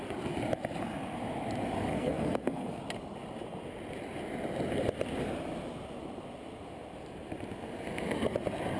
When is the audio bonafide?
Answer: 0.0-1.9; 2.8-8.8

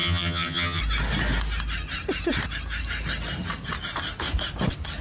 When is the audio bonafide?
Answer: 0.8-5.0